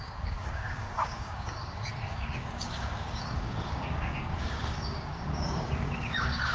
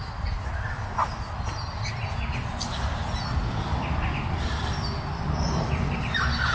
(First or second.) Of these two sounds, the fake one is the first